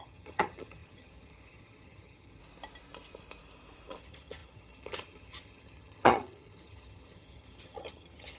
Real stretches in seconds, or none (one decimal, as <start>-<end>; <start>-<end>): 2.4-4.0